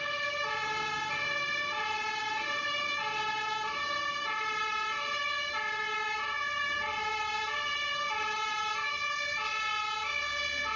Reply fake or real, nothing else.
real